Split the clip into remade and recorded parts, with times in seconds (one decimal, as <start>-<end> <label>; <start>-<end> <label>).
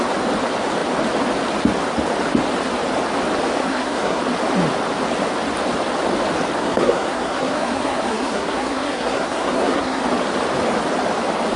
0.0-3.6 recorded; 3.6-4.2 remade; 4.2-6.6 recorded; 6.6-10.0 remade; 10.0-11.6 recorded